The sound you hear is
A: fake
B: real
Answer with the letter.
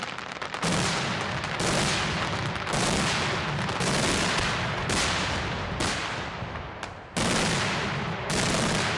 B